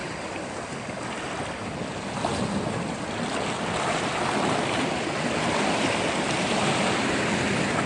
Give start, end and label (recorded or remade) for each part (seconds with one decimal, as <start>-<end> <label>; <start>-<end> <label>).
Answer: 0.0-7.9 recorded